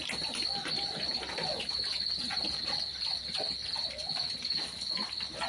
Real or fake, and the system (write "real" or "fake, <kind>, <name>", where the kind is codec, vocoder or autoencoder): fake, vocoder, BigVGAN v2